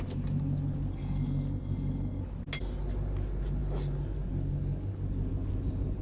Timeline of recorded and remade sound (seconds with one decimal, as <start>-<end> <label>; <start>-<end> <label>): 0.0-0.9 recorded; 0.9-2.2 remade; 2.2-6.0 recorded